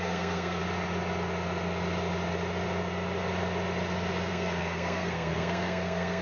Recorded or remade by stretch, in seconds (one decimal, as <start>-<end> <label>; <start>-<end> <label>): 0.0-0.6 remade; 0.6-4.3 recorded; 4.3-6.2 remade